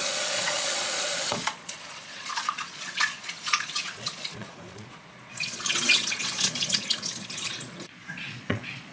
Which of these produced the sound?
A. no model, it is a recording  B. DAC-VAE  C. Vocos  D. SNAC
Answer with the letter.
C